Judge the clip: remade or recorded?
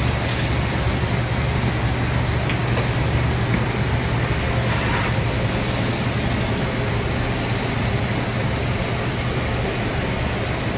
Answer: recorded